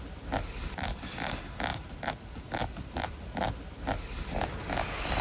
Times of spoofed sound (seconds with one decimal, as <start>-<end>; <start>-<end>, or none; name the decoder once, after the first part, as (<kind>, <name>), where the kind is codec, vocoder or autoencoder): none

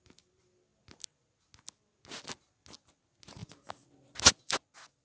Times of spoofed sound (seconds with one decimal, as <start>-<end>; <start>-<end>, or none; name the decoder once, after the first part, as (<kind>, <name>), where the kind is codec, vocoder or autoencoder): none

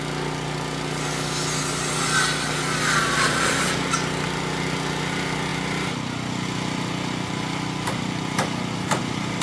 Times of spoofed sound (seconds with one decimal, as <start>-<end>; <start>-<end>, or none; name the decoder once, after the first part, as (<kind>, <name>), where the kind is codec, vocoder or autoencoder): none